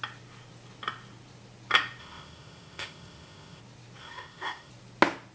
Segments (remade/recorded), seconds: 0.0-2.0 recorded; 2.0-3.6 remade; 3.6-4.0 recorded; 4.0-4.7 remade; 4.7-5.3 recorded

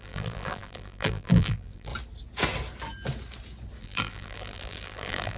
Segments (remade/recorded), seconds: 0.0-1.9 remade; 1.9-3.8 recorded; 3.8-5.4 remade

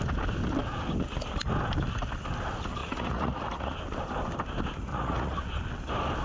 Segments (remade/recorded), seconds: 0.0-2.8 recorded; 2.8-3.7 remade; 3.7-4.9 recorded; 4.9-5.5 remade; 5.5-6.2 recorded

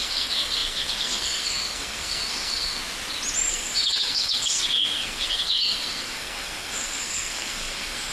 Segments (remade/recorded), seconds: 0.0-2.8 remade; 2.8-3.5 recorded; 3.5-8.1 remade

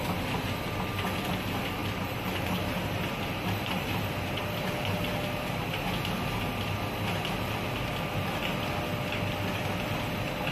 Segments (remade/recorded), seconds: 0.0-1.8 recorded; 1.8-3.9 remade; 3.9-10.5 recorded

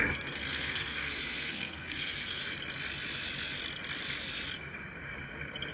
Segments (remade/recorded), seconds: 0.0-2.4 remade; 2.4-5.7 recorded

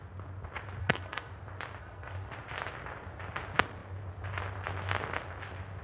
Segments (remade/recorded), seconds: 0.0-0.8 recorded; 0.8-1.3 remade; 1.3-1.8 recorded; 1.8-2.3 remade; 2.3-5.8 recorded

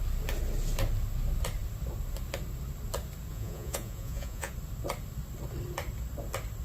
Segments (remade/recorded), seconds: 0.0-3.3 recorded; 3.3-4.5 remade; 4.5-6.6 recorded